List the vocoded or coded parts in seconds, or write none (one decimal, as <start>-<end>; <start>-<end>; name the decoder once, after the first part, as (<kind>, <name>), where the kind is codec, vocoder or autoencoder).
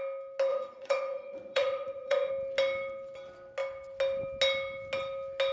0.5-2.3 (vocoder, Vocos)